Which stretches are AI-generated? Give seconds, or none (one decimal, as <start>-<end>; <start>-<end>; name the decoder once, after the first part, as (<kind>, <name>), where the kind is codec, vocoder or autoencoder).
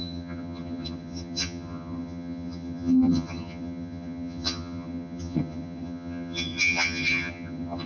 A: 0.0-7.9 (vocoder, HiFi-GAN)